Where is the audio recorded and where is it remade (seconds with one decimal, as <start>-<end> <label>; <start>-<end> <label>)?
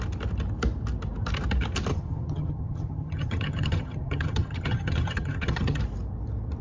0.0-1.9 recorded; 1.9-5.8 remade; 5.8-6.6 recorded